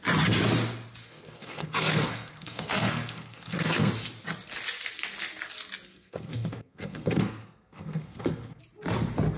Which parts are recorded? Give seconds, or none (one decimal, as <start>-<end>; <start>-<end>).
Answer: 0.0-1.0; 3.9-5.9; 8.6-9.4

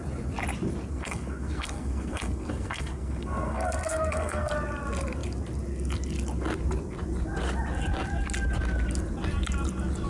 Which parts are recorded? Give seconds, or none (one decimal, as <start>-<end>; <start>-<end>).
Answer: 0.0-0.9; 4.5-10.1